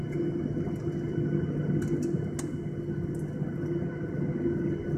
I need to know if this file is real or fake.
real